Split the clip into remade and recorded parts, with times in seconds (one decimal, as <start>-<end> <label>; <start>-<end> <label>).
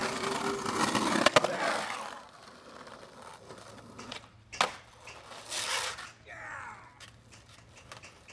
0.0-8.3 recorded